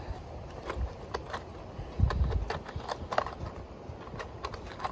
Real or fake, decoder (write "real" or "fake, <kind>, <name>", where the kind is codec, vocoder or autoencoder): real